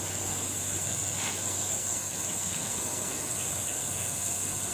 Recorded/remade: remade